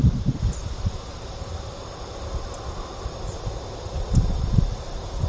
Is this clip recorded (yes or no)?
yes